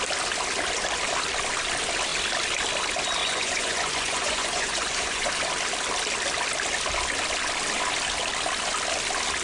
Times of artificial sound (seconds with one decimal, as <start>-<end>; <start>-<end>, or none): 3.2-5.3